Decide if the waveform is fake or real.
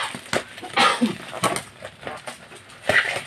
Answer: real